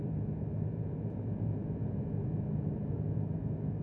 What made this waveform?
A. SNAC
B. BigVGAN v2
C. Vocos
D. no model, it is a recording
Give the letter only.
B